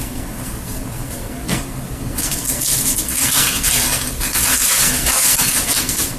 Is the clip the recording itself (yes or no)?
no